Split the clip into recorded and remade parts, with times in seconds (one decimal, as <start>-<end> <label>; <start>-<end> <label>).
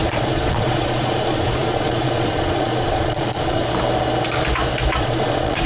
0.0-3.6 remade; 3.6-5.0 recorded; 5.0-5.7 remade